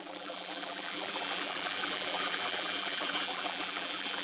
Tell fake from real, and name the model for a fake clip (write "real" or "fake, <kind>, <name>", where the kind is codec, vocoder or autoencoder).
fake, vocoder, BigVGAN v2